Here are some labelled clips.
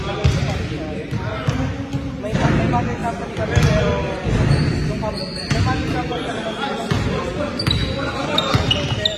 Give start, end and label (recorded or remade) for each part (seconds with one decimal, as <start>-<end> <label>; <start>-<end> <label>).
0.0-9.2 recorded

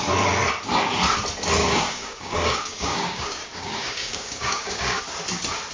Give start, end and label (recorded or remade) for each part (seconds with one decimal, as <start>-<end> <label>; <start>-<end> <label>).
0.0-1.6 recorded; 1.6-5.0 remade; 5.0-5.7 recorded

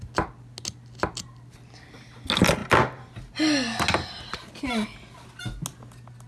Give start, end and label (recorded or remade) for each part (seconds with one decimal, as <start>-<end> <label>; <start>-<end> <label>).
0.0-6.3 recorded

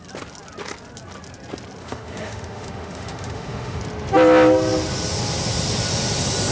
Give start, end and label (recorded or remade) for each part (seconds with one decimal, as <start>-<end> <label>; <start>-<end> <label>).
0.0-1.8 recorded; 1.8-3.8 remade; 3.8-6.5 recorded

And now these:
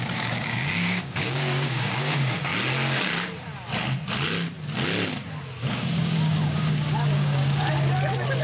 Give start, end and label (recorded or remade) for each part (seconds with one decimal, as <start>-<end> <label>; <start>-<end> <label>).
0.0-2.5 remade; 2.5-5.7 recorded; 5.7-8.4 remade

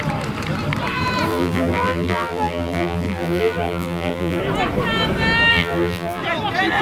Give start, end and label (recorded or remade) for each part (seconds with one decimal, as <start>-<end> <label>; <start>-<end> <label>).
0.0-1.3 recorded; 1.3-4.4 remade; 4.4-5.5 recorded; 5.5-6.2 remade; 6.2-6.8 recorded

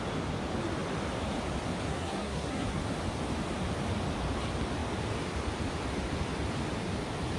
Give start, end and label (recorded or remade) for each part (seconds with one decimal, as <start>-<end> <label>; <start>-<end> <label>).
0.0-1.9 recorded; 1.9-2.8 remade; 2.8-7.4 recorded